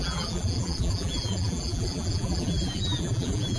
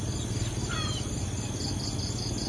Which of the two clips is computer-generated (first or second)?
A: first